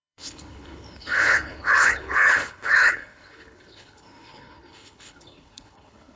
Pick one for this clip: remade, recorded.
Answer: remade